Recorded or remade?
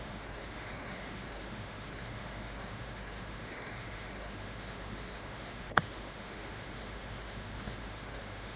remade